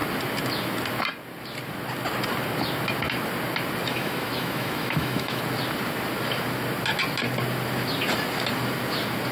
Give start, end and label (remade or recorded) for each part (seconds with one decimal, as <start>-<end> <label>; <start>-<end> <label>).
0.0-3.9 recorded; 3.9-5.4 remade; 5.4-9.3 recorded